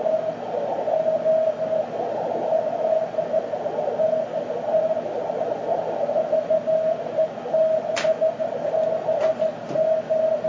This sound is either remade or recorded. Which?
recorded